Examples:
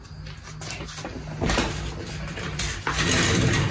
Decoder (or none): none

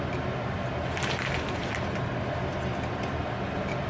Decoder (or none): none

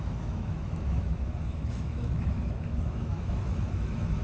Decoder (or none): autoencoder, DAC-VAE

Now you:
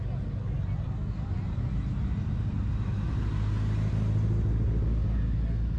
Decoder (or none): none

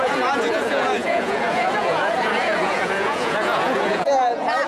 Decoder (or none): vocoder, Vocos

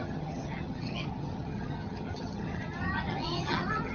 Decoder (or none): vocoder, HiFi-GAN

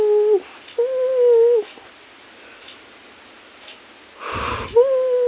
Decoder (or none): none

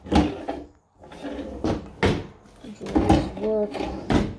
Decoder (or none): none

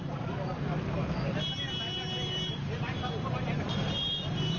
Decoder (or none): vocoder, BigVGAN v2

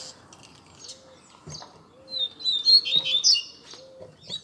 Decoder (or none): none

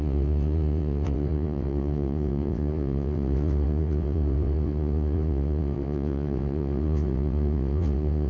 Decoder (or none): vocoder, WaveNeXt